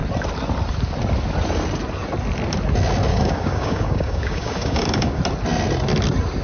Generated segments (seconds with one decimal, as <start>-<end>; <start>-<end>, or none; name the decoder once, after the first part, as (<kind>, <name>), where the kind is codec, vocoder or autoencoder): 3.1-5.2 (codec, DAC)